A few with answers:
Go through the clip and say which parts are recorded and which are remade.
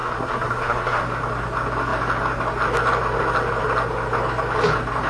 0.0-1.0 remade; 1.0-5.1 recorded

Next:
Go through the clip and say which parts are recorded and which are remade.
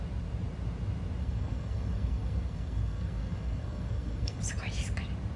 0.0-1.2 recorded; 1.2-4.4 remade; 4.4-5.4 recorded